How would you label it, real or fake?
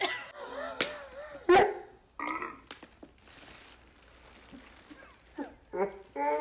real